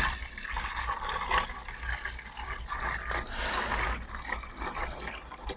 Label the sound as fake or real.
real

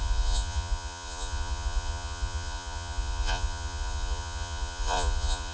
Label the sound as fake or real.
fake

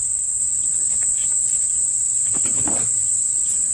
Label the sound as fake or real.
real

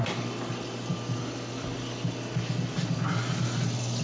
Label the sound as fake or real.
real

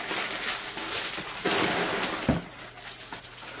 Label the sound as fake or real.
real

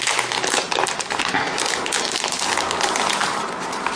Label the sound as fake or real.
real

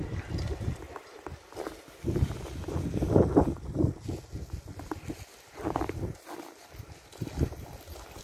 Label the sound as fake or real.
real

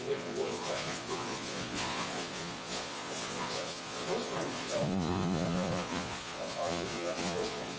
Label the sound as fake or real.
fake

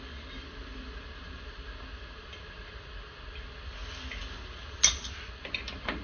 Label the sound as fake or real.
real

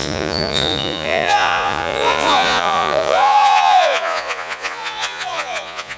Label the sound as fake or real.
fake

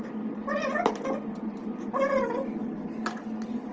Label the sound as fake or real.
real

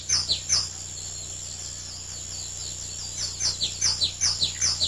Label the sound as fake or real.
real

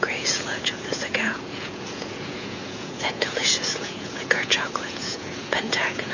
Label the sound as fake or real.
fake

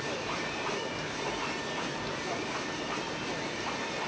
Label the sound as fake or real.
real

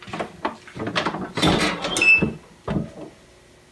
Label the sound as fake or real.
real